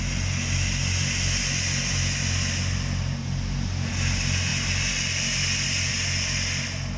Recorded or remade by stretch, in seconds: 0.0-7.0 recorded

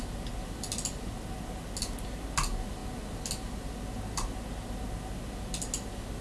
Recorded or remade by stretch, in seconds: 0.0-6.2 recorded

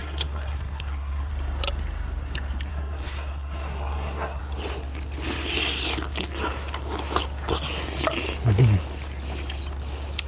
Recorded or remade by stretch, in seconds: 0.0-1.3 remade; 1.3-2.7 recorded; 2.7-4.4 remade; 4.4-10.3 recorded

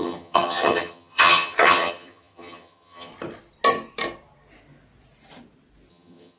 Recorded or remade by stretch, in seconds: 0.0-3.1 remade; 3.1-5.9 recorded; 5.9-6.4 remade

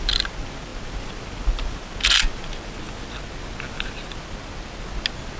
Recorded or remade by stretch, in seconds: 0.0-5.4 recorded

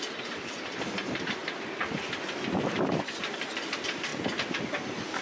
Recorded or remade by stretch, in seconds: 0.0-1.4 remade; 1.4-2.6 recorded; 2.6-4.1 remade; 4.1-4.7 recorded; 4.7-5.2 remade

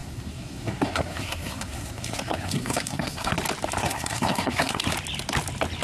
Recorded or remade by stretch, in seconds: 0.0-3.3 remade; 3.3-3.8 recorded; 3.8-4.8 remade; 4.8-5.8 recorded